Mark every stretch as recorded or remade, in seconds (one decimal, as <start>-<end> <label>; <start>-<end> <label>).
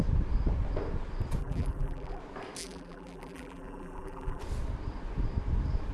0.0-1.4 recorded; 1.4-2.2 remade; 2.2-2.6 recorded; 2.6-4.4 remade; 4.4-5.9 recorded